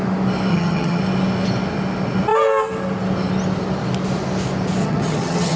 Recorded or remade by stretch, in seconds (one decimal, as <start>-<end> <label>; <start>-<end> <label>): 0.0-0.5 recorded; 0.5-1.0 remade; 1.0-4.8 recorded; 4.8-5.6 remade